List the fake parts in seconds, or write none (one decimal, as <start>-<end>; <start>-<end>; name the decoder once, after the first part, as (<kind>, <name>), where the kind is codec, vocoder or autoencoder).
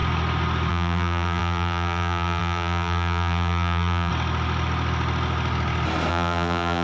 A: 0.7-4.1 (vocoder, BigVGAN v2); 6.1-6.8